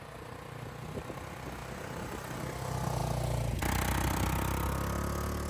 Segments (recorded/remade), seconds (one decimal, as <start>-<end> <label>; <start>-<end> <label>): 0.0-5.5 recorded